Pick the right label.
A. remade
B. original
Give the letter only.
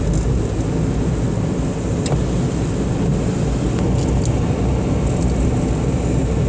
B